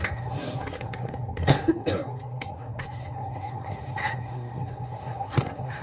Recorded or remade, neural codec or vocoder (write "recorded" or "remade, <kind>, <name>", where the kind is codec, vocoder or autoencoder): remade, codec, SNAC